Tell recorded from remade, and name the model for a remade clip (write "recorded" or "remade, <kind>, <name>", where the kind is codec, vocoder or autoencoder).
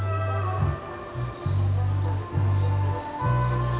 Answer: recorded